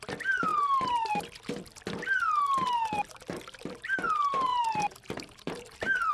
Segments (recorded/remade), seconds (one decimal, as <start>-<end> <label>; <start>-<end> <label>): 0.0-0.5 recorded; 0.5-1.1 remade; 1.1-4.5 recorded; 4.5-6.1 remade